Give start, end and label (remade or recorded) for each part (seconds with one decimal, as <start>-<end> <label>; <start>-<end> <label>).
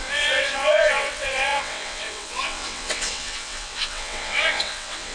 0.0-5.1 remade